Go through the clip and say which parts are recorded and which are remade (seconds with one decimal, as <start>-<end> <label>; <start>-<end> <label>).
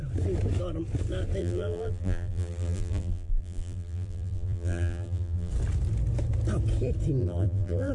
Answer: 0.0-1.4 recorded; 1.4-5.5 remade; 5.5-7.2 recorded; 7.2-7.9 remade